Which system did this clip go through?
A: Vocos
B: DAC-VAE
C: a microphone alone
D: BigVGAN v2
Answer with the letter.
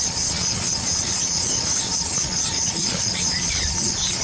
A